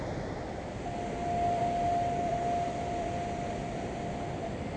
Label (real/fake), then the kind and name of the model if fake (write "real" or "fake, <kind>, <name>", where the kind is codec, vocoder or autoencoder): real